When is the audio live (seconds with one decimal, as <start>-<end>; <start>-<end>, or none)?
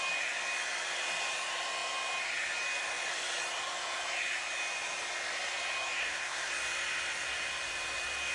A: 0.0-6.0; 6.5-8.3